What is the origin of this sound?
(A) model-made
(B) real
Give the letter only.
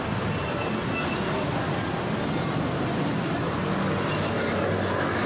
B